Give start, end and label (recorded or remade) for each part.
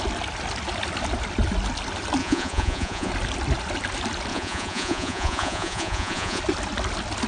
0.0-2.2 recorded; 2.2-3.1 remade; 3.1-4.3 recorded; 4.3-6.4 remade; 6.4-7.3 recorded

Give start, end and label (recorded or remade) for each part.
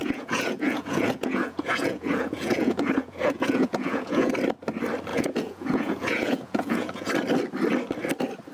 0.0-4.3 remade; 4.3-5.1 recorded; 5.1-7.1 remade; 7.1-8.5 recorded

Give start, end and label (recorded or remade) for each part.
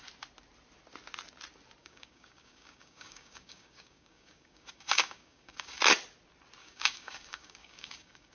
0.0-1.8 recorded; 1.8-5.8 remade; 5.8-6.6 recorded; 6.6-8.3 remade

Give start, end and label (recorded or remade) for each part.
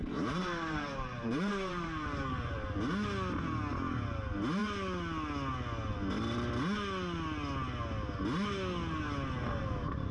0.0-2.8 remade; 2.8-10.1 recorded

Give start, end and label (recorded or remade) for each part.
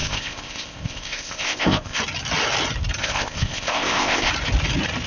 0.0-2.0 remade; 2.0-3.0 recorded; 3.0-4.3 remade; 4.3-5.1 recorded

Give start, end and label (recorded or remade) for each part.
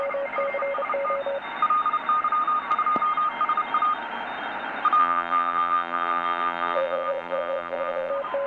0.0-5.0 recorded; 5.0-8.1 remade; 8.1-8.5 recorded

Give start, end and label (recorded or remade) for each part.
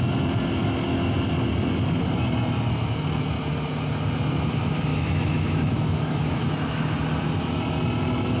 0.0-4.9 recorded; 4.9-6.5 remade; 6.5-8.4 recorded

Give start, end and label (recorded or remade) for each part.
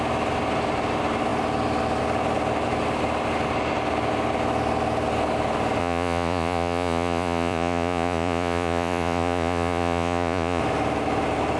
0.0-5.8 recorded; 5.8-10.6 remade; 10.6-11.6 recorded